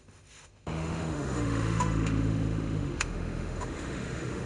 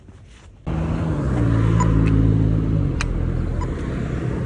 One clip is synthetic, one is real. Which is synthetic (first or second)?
first